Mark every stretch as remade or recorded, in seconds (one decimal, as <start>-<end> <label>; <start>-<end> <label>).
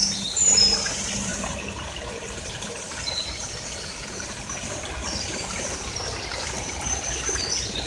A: 0.0-0.9 remade; 0.9-1.3 recorded; 1.3-4.4 remade; 4.4-7.9 recorded